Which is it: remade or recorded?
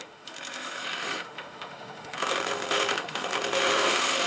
remade